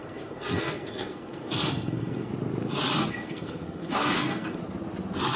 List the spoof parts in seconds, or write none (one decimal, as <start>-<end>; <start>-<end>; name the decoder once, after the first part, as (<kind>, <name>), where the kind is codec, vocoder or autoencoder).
0.0-2.3 (codec, SNAC); 3.1-4.6

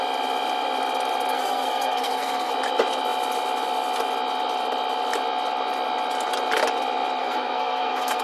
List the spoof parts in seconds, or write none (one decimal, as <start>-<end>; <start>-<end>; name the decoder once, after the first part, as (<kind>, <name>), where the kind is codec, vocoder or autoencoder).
1.3-2.5 (codec, SNAC); 7.2-8.2

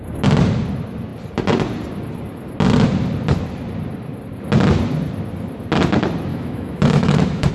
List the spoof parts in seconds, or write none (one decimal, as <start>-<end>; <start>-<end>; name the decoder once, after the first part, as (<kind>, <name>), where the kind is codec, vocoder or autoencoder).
6.3-7.5 (autoencoder, DAC-VAE)

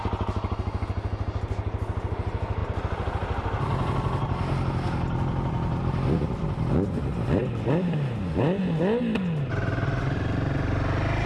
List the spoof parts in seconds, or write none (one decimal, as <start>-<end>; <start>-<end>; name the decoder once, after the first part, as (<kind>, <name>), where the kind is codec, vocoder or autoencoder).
none

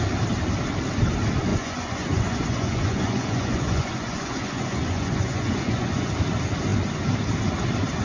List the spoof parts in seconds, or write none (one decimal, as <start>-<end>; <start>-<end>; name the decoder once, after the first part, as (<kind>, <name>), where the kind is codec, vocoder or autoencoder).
1.5-6.1 (vocoder, Vocos)

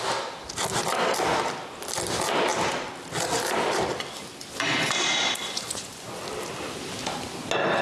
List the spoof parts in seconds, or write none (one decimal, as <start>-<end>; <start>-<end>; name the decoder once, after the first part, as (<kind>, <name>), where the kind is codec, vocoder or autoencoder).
5.4-6.2 (vocoder, Vocos)